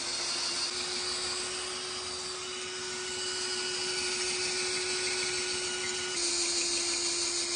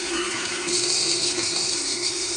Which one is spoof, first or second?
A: second